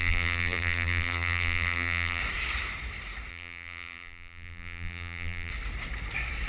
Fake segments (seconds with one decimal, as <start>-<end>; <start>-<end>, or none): 0.0-2.2; 3.3-5.5

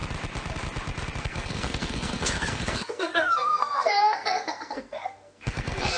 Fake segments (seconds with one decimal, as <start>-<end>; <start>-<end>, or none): 1.2-6.0

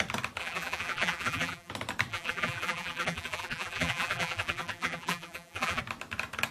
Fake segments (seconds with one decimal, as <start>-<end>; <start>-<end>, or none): 0.4-1.7; 2.1-5.8

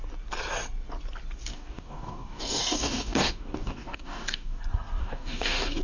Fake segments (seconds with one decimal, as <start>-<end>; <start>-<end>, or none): 1.5-4.6; 5.0-5.8

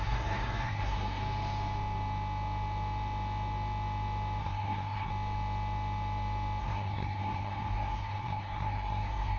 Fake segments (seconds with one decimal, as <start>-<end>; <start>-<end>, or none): 0.0-1.2; 4.4-5.1; 6.6-9.4

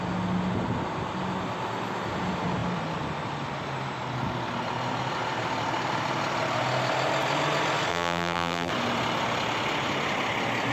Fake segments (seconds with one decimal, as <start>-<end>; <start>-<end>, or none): 7.9-8.7